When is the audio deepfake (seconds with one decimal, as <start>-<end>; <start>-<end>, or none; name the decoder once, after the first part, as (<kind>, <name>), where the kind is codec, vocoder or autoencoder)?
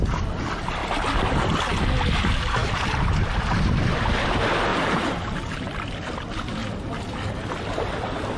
2.6-3.9 (vocoder, BigVGAN v2); 4.7-5.7